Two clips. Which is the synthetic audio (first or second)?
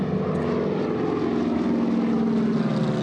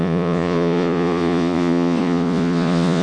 second